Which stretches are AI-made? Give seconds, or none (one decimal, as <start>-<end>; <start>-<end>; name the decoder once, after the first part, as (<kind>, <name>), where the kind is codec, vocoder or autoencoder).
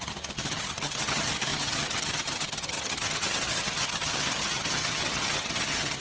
0.0-6.0 (vocoder, HiFi-GAN)